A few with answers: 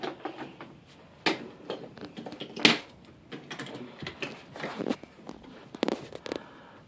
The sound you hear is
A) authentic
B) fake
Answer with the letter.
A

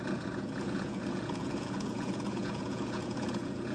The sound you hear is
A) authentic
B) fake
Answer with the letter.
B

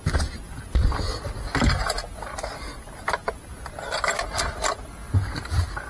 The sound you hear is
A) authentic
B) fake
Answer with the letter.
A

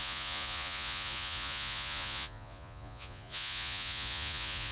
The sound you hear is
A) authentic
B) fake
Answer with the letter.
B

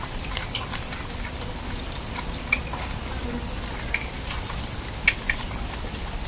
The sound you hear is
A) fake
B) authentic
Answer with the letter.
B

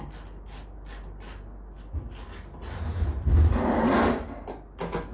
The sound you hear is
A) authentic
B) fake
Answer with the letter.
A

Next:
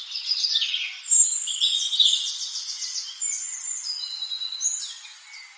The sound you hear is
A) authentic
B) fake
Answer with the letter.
A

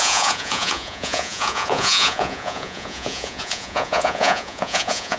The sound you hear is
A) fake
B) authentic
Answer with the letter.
A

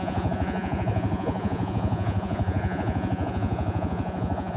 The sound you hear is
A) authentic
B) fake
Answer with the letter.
B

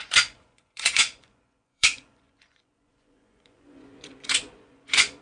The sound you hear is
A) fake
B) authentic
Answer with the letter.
A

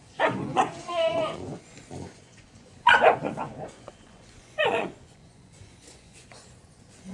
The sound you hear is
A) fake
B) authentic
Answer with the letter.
A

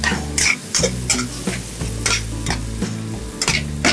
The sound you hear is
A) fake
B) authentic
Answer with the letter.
B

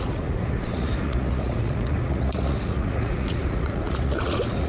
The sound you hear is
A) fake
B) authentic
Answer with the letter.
A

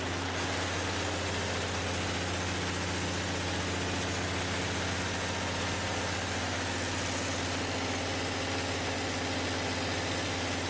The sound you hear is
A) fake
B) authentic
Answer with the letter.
B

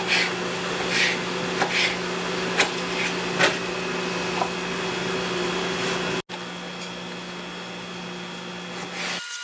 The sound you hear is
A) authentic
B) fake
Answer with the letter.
A